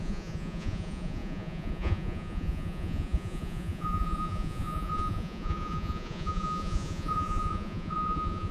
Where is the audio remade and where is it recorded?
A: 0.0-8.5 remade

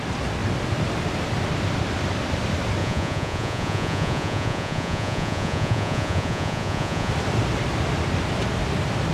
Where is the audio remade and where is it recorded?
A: 0.0-2.8 recorded; 2.8-7.1 remade; 7.1-9.1 recorded

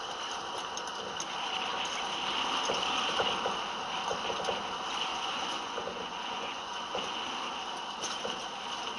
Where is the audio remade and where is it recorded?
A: 0.0-5.1 recorded; 5.1-7.2 remade; 7.2-9.0 recorded

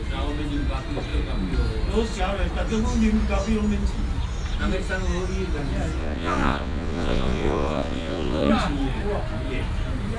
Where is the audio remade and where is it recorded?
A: 0.0-6.0 recorded; 6.0-8.5 remade; 8.5-10.2 recorded

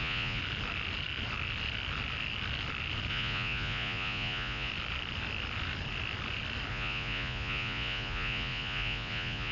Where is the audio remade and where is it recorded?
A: 0.0-0.4 remade; 0.4-3.1 recorded; 3.1-4.7 remade; 4.7-6.7 recorded; 6.7-9.5 remade

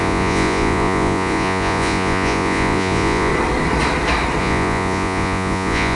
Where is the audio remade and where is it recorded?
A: 0.0-3.3 remade; 3.3-4.4 recorded; 4.4-6.0 remade

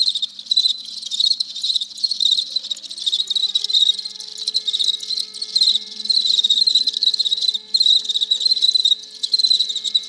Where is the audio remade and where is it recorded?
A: 0.0-0.6 recorded; 0.6-2.2 remade; 2.2-8.8 recorded; 8.8-9.4 remade; 9.4-10.1 recorded